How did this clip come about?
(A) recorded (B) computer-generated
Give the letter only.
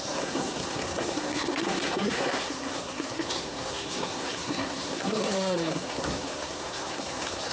B